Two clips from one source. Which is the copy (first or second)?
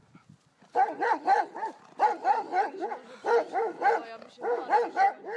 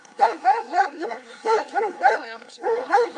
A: second